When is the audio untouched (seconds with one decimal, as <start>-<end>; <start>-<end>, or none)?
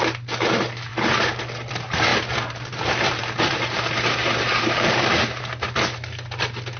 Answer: 0.0-2.1; 5.4-6.8